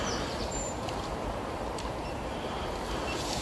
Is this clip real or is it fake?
fake